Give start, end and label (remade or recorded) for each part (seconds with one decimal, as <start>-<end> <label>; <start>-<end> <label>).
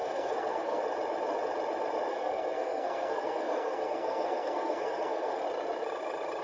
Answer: 0.0-0.8 remade; 0.8-2.1 recorded; 2.1-5.3 remade; 5.3-6.4 recorded